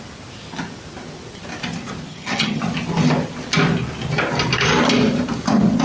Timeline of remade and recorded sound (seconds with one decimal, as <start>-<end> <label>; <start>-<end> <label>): 0.0-2.1 recorded; 2.1-2.6 remade; 2.6-5.8 recorded